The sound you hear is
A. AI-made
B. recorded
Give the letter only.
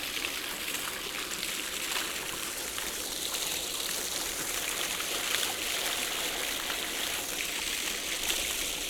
B